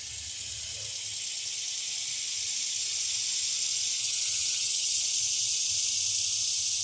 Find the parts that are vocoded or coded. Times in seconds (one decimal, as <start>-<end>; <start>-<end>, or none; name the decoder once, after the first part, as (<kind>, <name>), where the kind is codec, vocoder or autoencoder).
4.0-5.0 (vocoder, HiFi-GAN)